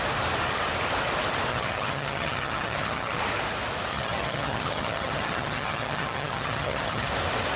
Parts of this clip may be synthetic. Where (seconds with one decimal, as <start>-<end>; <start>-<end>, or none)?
1.5-3.2; 3.9-7.1